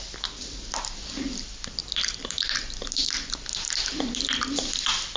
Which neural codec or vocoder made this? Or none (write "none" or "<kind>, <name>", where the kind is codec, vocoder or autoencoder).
vocoder, BigVGAN v2